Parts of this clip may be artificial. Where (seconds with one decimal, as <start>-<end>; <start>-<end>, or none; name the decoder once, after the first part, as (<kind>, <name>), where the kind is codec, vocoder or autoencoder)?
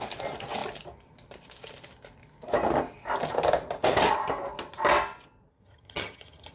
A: 5.5-6.5 (vocoder, HiFi-GAN)